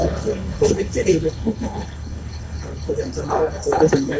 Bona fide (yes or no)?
no